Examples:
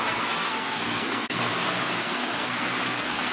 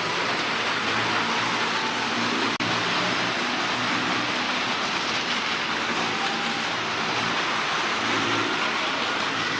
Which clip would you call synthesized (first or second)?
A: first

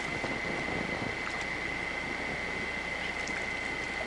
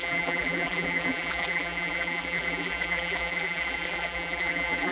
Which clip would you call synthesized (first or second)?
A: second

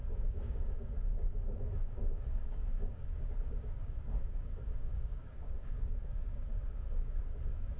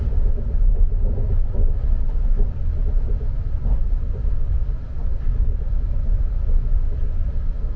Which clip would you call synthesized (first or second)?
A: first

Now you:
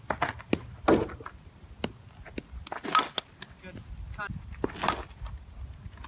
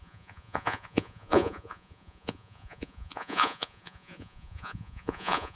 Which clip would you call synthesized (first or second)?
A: second